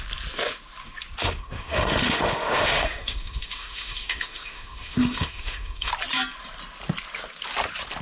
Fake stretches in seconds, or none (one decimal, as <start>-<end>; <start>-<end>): 1.2-5.9